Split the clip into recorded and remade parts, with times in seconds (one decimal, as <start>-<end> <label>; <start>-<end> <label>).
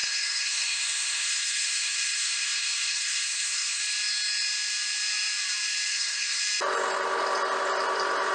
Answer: 0.0-3.8 remade; 3.8-5.9 recorded; 5.9-6.4 remade; 6.4-8.3 recorded